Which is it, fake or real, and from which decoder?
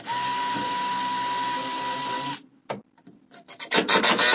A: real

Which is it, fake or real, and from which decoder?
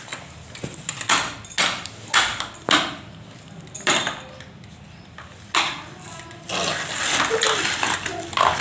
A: real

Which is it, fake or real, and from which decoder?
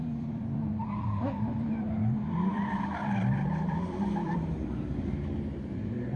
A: fake, vocoder, BigVGAN v2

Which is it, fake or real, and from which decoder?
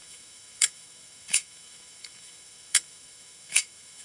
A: fake, autoencoder, DAC-VAE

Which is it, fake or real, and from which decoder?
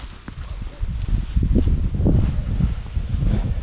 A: real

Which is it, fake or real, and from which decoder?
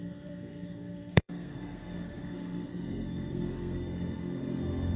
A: fake, codec, SNAC